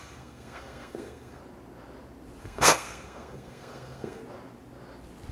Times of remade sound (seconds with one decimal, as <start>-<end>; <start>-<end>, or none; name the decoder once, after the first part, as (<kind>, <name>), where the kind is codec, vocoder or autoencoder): 0.0-1.4 (codec, SNAC); 2.4-4.2